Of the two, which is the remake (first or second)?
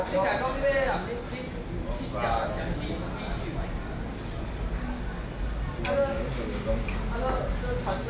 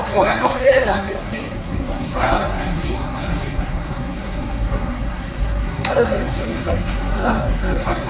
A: second